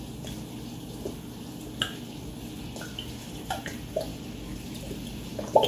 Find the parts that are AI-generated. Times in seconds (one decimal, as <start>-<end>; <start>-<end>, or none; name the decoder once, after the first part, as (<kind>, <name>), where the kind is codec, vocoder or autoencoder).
none